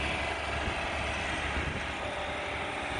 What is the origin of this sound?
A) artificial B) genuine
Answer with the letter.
B